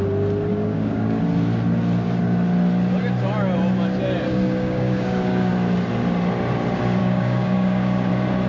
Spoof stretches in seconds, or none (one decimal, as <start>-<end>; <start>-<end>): 0.5-1.2; 4.3-5.5; 7.0-8.1